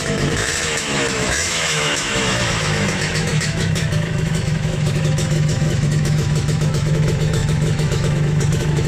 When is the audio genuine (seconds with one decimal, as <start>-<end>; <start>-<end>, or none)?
none

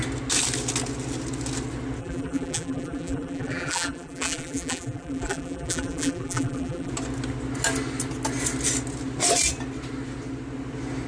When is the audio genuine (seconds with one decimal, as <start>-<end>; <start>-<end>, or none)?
0.0-2.0; 6.9-11.1

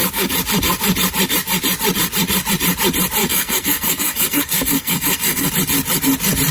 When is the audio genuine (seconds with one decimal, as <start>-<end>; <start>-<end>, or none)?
0.0-3.2; 5.5-6.5

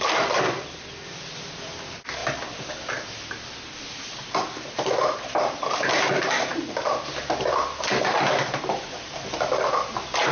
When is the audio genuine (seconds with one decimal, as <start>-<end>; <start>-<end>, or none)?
0.0-10.3

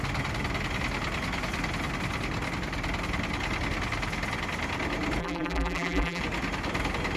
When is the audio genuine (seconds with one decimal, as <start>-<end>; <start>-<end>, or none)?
0.0-5.2; 6.2-7.2

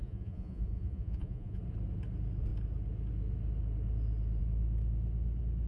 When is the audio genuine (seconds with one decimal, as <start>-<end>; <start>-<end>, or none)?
1.6-5.7